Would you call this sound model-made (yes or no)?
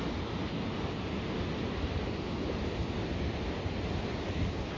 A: no